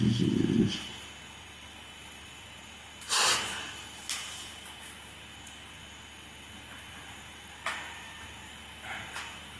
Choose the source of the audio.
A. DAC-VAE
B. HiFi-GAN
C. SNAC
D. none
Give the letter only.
D